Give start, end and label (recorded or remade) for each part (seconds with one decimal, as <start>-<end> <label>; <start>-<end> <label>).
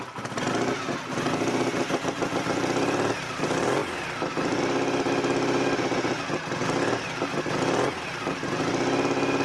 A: 0.0-9.4 recorded